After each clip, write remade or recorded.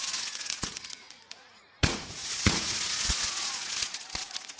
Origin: remade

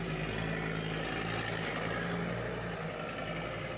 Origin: recorded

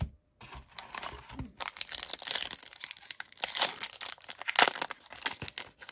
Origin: recorded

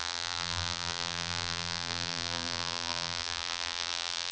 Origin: remade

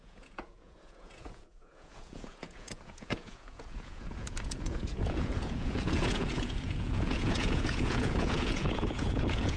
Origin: remade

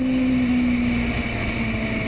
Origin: recorded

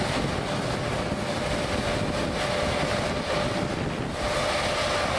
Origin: recorded